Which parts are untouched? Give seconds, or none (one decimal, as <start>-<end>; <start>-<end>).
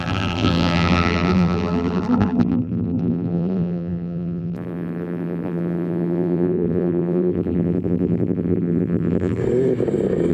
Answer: 9.4-10.3